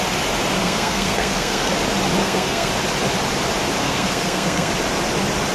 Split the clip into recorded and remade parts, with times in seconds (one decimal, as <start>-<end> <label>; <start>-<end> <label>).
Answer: 0.0-0.6 recorded; 0.6-1.7 remade; 1.7-2.2 recorded; 2.2-2.7 remade; 2.7-3.8 recorded; 3.8-4.7 remade; 4.7-5.5 recorded